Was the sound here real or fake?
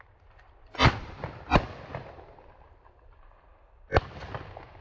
real